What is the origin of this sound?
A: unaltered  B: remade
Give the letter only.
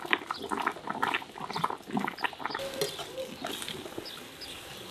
A